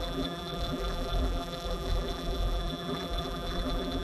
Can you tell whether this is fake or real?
fake